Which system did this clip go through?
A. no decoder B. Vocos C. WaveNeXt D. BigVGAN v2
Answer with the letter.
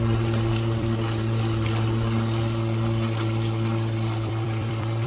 D